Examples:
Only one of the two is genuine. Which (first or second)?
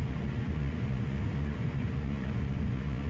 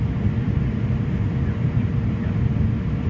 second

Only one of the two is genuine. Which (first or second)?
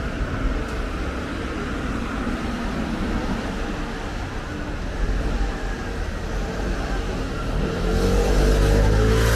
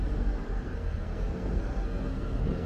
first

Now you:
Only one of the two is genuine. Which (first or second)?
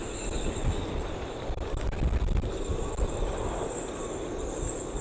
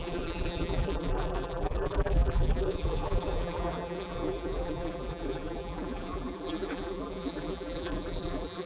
first